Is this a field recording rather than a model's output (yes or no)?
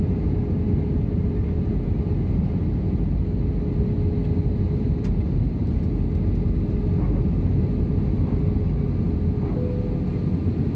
yes